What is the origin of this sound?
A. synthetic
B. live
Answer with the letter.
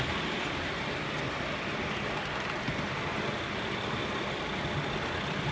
B